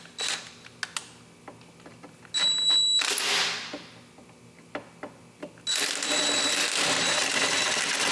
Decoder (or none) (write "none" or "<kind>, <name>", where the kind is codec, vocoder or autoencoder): none